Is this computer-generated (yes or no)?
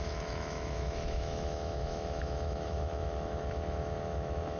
yes